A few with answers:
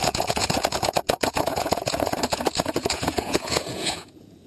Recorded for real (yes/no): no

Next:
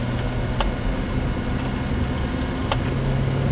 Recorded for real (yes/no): yes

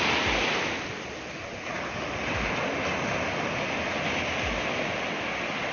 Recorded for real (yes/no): yes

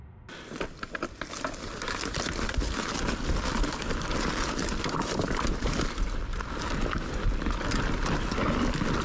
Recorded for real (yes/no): yes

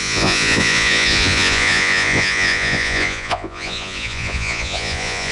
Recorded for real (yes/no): no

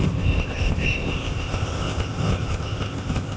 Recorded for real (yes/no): no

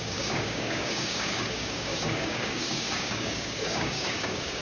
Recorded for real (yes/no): no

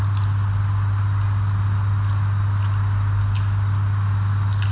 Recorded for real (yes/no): yes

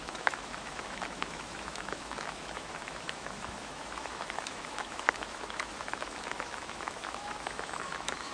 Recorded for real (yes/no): no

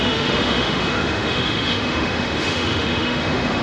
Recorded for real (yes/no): no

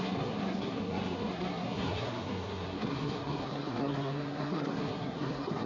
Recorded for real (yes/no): no